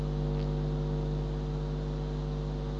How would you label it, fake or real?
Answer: real